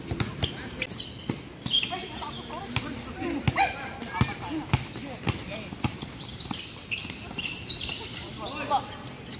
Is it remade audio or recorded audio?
recorded